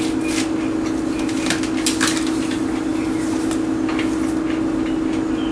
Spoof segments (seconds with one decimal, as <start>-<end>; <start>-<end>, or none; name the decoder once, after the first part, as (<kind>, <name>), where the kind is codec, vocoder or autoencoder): none